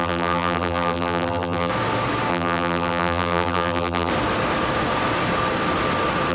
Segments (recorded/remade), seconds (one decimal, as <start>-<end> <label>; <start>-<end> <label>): 0.0-1.7 remade; 1.7-2.3 recorded; 2.3-4.1 remade; 4.1-6.3 recorded